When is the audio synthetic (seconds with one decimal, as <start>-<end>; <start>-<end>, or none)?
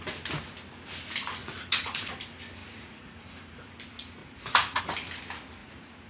1.4-2.1; 2.6-3.7; 4.2-4.8; 5.6-6.1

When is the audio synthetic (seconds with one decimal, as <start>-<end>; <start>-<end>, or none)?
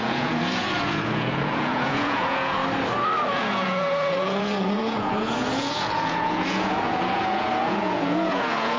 0.0-2.6; 3.3-8.8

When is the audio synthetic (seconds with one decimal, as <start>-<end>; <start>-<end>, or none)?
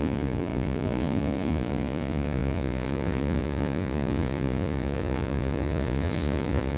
0.0-6.8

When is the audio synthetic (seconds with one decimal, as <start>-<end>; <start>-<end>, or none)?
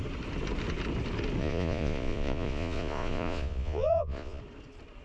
1.4-4.4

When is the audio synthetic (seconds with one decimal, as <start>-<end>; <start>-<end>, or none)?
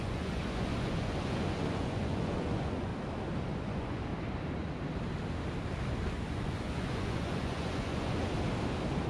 0.0-2.9; 3.5-4.1; 6.3-8.2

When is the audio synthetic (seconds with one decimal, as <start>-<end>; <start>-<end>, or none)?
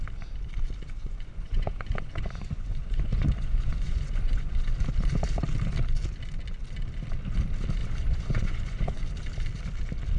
1.0-4.5; 7.8-9.0